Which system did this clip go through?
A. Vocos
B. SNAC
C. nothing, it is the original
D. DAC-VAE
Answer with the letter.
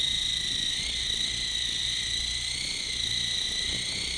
C